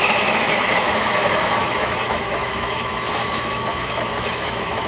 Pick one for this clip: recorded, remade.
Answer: remade